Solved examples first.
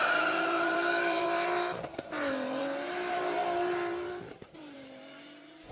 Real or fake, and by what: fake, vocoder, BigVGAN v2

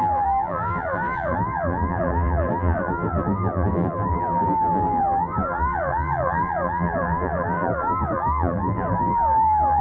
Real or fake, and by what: fake, vocoder, BigVGAN v2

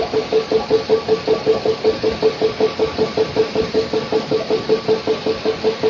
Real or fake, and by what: real